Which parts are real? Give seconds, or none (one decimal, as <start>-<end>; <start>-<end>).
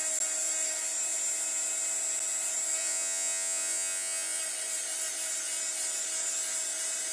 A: 0.0-2.8; 4.4-7.1